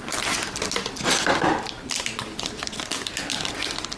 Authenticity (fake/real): real